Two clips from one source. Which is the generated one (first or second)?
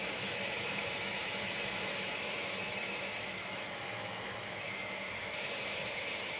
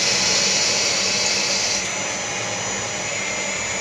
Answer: first